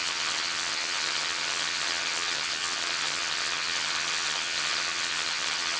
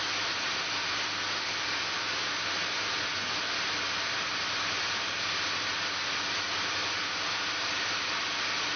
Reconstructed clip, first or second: first